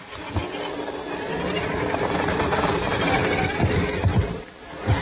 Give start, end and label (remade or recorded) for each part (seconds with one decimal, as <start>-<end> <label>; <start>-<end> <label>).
0.0-0.4 remade; 0.4-1.2 recorded; 1.2-5.0 remade